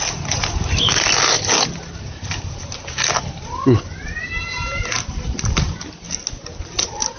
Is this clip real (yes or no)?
yes